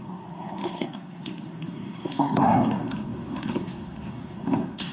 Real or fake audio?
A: fake